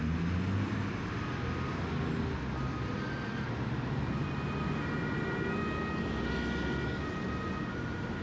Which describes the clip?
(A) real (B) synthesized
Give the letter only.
A